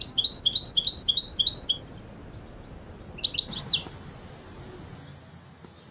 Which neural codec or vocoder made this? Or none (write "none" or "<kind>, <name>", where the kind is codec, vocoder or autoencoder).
none